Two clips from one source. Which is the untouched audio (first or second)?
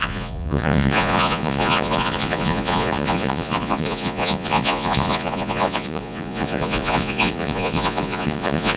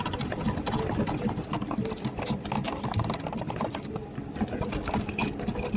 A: second